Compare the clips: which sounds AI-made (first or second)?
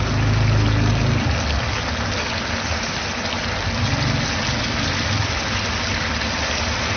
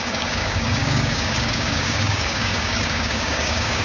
second